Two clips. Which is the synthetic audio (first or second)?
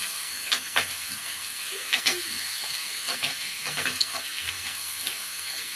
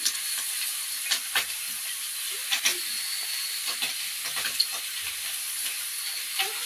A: first